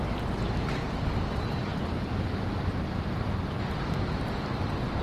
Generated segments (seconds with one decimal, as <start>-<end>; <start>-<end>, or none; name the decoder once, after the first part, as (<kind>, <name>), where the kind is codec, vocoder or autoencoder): 0.0-1.7 (vocoder, BigVGAN v2); 4.0-5.0